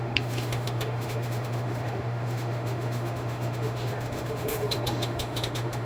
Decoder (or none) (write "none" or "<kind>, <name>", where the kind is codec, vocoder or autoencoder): autoencoder, DAC-VAE